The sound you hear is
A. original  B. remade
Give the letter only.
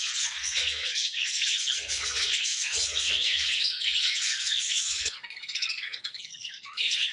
B